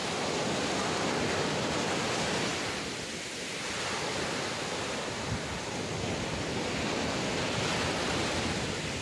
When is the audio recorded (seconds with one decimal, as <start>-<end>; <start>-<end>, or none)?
2.1-9.0